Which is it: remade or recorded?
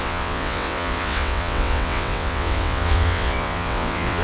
remade